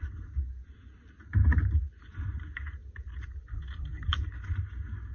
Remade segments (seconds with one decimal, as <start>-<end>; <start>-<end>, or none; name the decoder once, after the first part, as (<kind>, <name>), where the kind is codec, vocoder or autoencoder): none

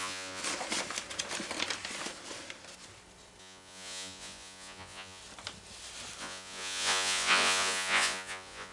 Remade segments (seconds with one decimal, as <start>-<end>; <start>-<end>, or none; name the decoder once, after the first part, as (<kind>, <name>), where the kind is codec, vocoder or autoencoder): 0.0-0.4 (vocoder, Vocos); 3.4-5.2; 6.2-8.7

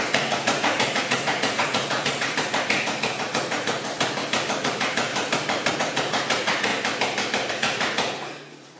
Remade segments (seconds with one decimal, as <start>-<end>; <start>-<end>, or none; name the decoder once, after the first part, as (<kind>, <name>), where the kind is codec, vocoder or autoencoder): 0.0-3.9 (vocoder, Vocos); 4.6-5.1; 5.7-6.7; 7.5-8.8